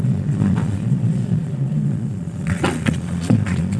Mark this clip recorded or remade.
remade